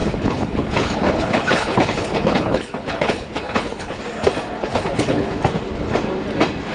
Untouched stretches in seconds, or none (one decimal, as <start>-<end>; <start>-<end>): 4.0-4.6; 5.4-6.7